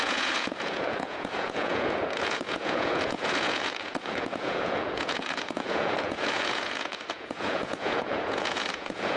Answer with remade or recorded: remade